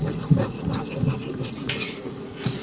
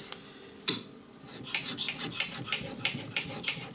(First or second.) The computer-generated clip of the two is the first